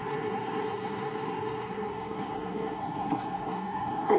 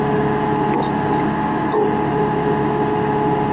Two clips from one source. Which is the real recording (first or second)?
second